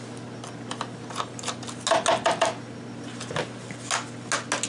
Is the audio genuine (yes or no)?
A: yes